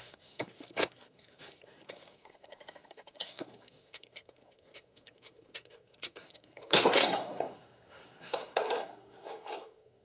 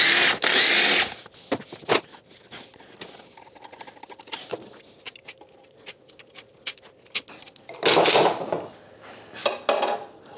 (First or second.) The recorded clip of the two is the second